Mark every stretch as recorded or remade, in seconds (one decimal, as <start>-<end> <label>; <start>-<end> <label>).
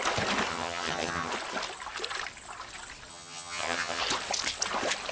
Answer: 0.0-0.5 recorded; 0.5-1.3 remade; 1.3-3.1 recorded; 3.1-4.0 remade; 4.0-5.1 recorded